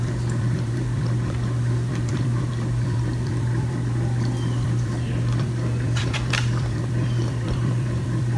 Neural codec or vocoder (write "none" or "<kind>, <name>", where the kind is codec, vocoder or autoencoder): vocoder, BigVGAN v2